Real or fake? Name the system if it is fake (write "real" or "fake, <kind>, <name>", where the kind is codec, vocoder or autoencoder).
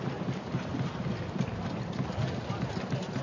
real